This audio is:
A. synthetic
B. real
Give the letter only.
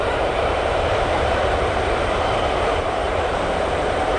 A